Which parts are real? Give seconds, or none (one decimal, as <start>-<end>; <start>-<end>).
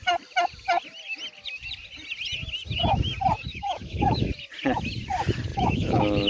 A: 0.0-3.5; 4.3-5.5